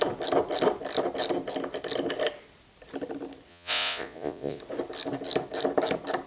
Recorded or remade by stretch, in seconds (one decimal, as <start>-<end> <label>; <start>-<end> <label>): 0.0-3.5 recorded; 3.5-4.6 remade; 4.6-6.3 recorded